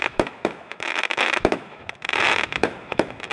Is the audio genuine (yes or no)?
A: no